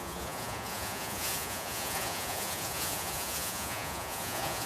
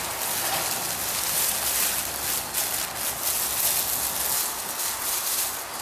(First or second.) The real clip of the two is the second